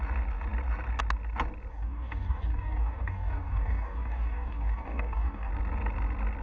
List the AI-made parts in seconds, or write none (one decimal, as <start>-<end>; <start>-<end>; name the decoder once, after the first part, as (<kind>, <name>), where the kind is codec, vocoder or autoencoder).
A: 1.7-5.5 (codec, DAC)